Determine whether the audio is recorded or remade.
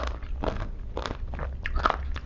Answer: recorded